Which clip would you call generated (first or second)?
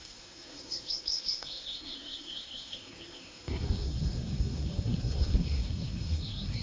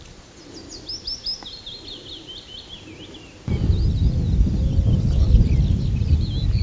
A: first